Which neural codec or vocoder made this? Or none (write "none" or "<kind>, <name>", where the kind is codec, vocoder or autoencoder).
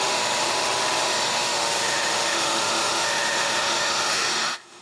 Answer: autoencoder, DAC-VAE